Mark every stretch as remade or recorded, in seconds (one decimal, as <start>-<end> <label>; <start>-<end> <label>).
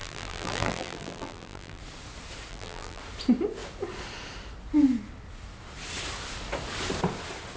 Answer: 0.0-1.8 remade; 1.8-2.5 recorded; 2.5-3.0 remade; 3.0-7.6 recorded